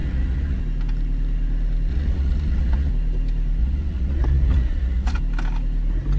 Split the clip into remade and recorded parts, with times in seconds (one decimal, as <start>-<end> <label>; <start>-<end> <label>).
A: 0.0-0.6 remade; 0.6-1.9 recorded; 1.9-2.9 remade; 2.9-3.6 recorded; 3.6-5.2 remade; 5.2-6.2 recorded